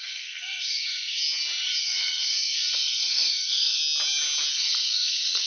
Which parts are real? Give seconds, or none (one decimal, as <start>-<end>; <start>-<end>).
1.2-1.8; 3.8-4.5